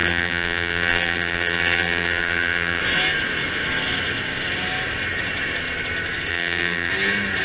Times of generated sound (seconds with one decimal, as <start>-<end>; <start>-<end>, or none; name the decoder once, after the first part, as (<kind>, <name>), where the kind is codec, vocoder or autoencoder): 0.0-2.8 (vocoder, BigVGAN v2); 6.3-6.9